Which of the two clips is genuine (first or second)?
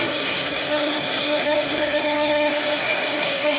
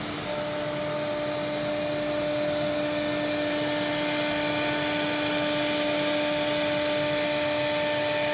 second